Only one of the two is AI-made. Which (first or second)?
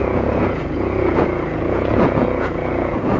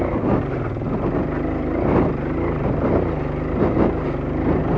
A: first